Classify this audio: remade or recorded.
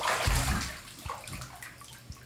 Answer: recorded